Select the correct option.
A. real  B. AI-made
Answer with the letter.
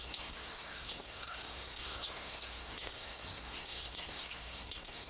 B